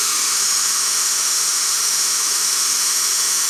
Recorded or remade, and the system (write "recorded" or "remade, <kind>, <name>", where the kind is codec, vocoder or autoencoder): remade, autoencoder, DAC-VAE